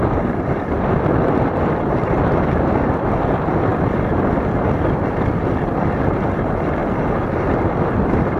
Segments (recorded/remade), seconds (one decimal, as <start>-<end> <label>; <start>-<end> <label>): 0.0-6.8 remade; 6.8-7.9 recorded; 7.9-8.4 remade